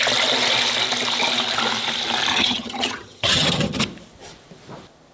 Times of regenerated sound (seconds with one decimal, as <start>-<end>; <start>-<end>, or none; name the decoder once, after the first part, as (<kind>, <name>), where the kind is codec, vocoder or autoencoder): 2.3-3.8 (vocoder, HiFi-GAN)